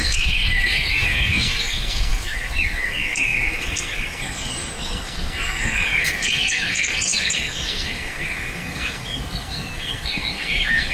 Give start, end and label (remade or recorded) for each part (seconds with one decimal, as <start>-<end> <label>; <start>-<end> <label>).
0.0-10.9 remade